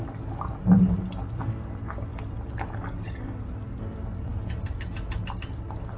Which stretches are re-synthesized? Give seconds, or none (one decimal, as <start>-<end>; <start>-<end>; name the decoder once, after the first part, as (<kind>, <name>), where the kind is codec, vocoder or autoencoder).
2.1-3.1 (vocoder, BigVGAN v2)